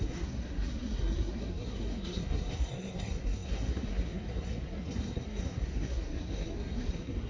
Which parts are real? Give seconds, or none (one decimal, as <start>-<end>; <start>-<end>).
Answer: none